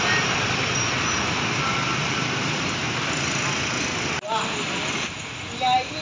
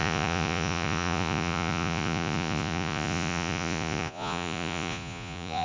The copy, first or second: second